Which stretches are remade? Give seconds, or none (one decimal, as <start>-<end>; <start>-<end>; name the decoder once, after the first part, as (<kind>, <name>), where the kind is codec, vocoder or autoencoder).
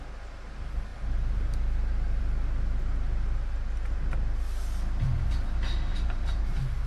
0.9-2.2 (vocoder, BigVGAN v2); 5.9-6.5